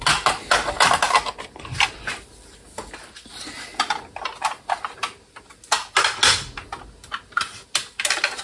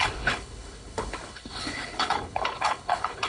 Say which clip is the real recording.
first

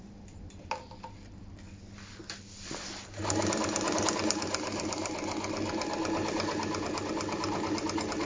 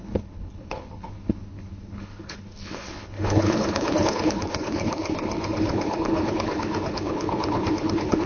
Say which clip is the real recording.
first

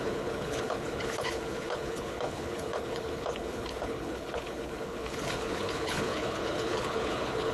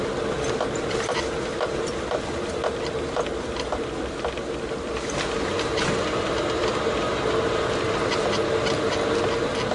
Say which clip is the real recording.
second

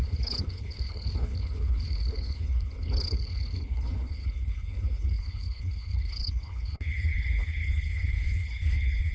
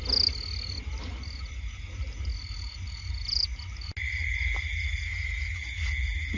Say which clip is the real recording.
second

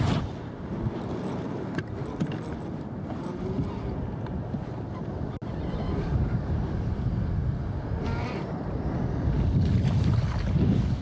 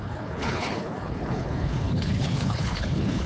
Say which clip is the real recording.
first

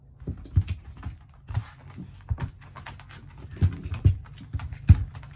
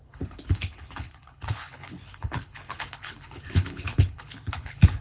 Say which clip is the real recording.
first